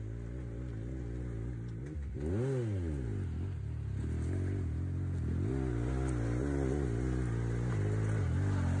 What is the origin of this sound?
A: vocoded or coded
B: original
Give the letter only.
B